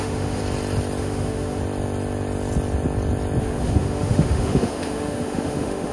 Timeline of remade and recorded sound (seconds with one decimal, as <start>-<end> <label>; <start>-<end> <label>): 0.0-0.4 remade; 0.4-1.0 recorded; 1.0-1.6 remade; 1.6-3.4 recorded; 3.4-5.9 remade